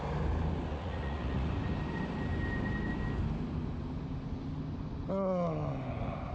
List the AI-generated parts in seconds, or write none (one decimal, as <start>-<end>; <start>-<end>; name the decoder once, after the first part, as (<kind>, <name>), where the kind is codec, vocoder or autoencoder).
0.7-1.5 (vocoder, Vocos)